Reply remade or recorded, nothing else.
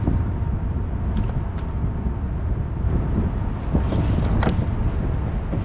recorded